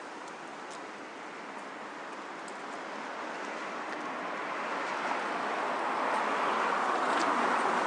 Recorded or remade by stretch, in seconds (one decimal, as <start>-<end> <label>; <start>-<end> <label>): 0.0-7.9 recorded